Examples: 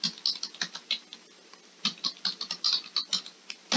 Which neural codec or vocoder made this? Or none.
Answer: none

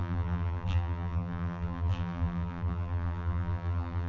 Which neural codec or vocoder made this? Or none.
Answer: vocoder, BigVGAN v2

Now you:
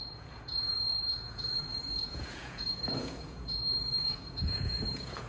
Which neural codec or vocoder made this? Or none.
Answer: vocoder, Vocos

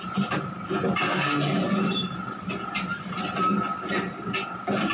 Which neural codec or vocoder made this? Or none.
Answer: none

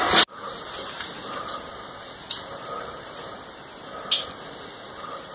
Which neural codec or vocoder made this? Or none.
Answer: none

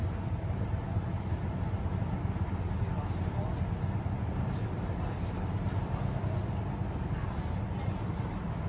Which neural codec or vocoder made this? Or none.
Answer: none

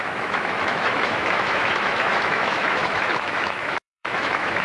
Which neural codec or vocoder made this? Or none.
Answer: autoencoder, DAC-VAE